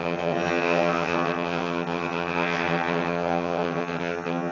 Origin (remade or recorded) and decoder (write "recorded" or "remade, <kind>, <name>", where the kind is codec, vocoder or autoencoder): remade, vocoder, HiFi-GAN